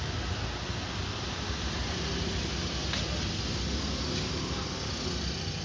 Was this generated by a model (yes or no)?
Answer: no